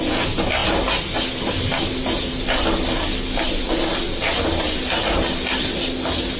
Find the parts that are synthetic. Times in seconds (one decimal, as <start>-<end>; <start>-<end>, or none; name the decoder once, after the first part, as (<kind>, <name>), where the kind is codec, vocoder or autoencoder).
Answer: none